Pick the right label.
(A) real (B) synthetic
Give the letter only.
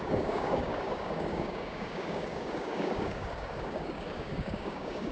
B